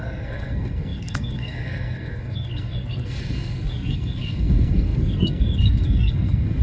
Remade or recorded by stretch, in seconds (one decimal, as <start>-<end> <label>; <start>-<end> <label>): 0.0-6.6 remade